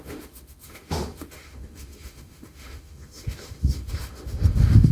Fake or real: fake